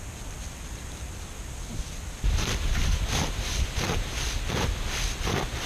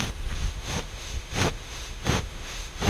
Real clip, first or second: first